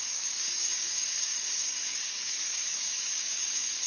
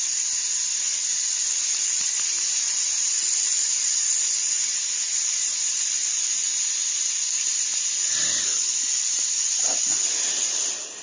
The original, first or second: second